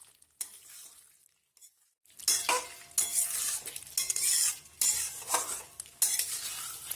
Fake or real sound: real